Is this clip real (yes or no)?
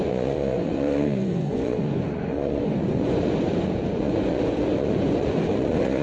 no